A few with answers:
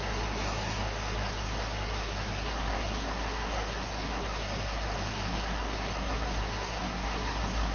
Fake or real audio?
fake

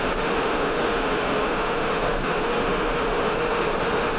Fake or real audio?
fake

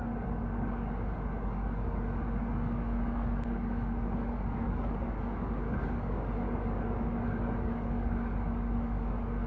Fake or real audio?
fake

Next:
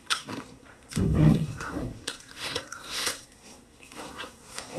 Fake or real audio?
fake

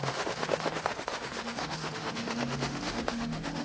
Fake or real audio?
fake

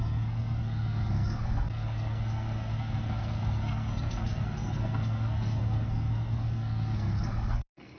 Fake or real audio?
fake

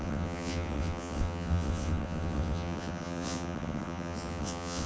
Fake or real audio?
fake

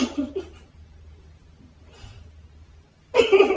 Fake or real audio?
real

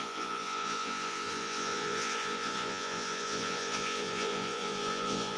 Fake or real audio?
fake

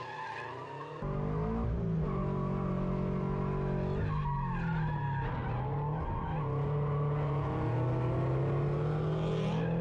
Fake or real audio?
real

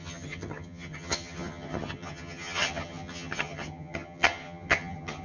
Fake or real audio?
fake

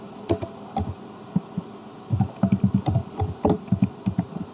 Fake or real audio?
real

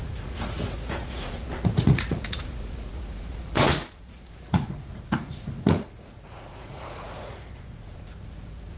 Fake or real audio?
fake